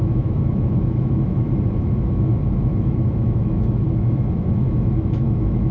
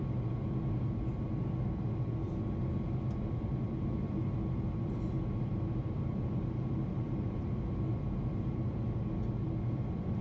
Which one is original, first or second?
second